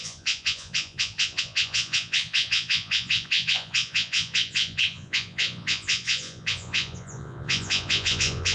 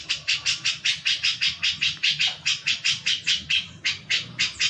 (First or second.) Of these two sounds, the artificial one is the first